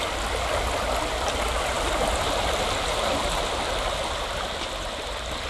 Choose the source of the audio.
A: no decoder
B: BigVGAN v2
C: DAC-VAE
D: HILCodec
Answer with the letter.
A